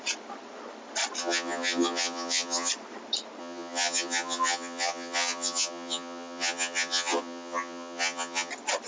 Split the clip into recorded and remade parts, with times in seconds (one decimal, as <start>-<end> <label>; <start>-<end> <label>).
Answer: 0.0-1.2 recorded; 1.2-2.7 remade; 2.7-3.4 recorded; 3.4-8.5 remade; 8.5-8.9 recorded